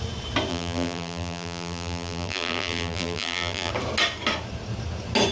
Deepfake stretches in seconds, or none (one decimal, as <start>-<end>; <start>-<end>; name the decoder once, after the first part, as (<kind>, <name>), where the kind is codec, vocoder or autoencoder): 0.5-3.7 (vocoder, BigVGAN v2)